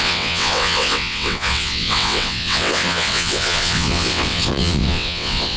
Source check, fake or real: fake